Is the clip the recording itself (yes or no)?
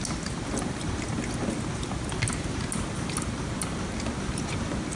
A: yes